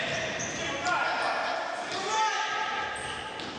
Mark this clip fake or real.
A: real